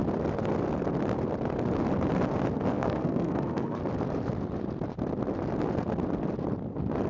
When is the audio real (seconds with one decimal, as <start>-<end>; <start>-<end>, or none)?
0.0-2.7; 3.8-7.1